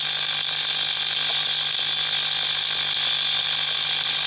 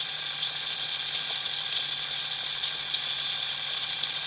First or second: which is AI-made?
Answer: second